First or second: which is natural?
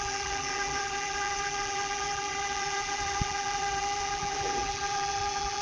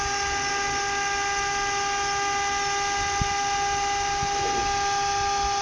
second